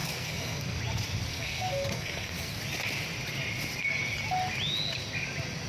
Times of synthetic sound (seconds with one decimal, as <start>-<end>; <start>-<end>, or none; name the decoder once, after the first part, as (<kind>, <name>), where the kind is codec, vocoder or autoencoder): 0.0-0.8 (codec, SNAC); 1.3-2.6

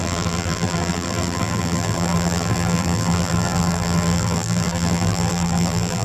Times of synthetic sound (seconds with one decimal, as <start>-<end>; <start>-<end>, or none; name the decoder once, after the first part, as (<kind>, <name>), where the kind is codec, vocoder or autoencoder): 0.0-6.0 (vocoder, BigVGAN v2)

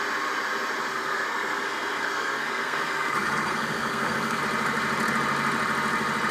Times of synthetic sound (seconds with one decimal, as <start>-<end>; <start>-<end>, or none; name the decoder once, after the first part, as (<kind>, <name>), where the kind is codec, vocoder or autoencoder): 0.9-4.4 (codec, SNAC)

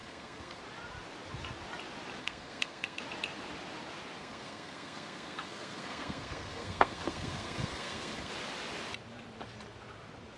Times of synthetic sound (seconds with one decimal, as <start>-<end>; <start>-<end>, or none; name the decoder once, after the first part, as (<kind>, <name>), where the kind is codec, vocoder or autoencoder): 0.0-0.6 (codec, SNAC); 2.2-3.0; 4.2-8.3